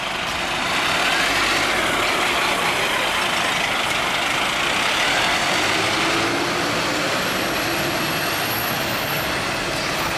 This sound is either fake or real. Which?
real